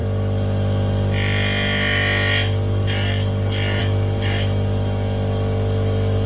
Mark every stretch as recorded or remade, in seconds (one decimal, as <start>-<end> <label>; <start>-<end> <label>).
0.0-6.3 recorded